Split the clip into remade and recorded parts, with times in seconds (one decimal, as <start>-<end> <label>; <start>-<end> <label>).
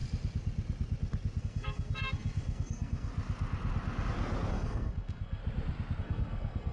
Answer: 0.0-1.4 recorded; 1.4-3.1 remade; 3.1-4.5 recorded; 4.5-5.4 remade; 5.4-6.0 recorded; 6.0-6.7 remade